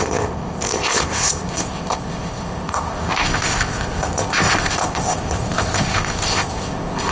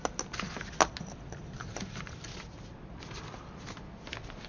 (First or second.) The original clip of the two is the second